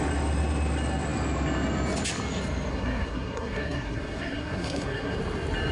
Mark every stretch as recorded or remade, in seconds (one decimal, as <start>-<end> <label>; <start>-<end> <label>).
0.0-2.7 recorded; 2.7-5.2 remade; 5.2-5.7 recorded